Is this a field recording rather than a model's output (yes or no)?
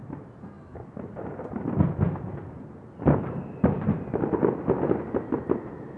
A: yes